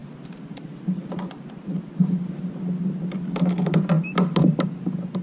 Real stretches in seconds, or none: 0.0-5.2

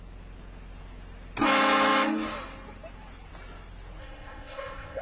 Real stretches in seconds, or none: 0.0-4.0

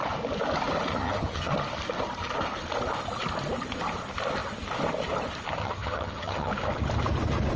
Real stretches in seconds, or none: 0.0-0.9; 1.5-5.6; 6.5-7.6

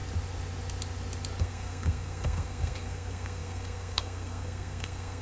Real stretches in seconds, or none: 0.0-1.4

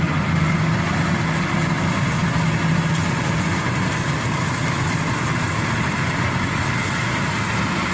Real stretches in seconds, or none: 0.0-7.9